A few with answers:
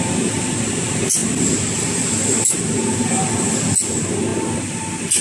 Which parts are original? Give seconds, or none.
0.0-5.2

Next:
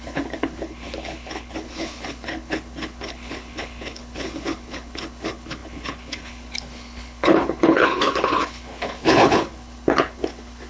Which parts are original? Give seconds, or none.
none

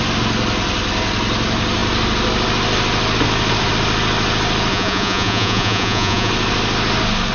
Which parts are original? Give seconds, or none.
0.0-4.7; 6.3-7.3

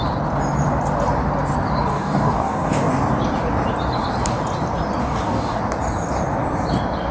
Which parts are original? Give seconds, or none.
0.0-1.9; 2.9-5.0; 5.6-7.1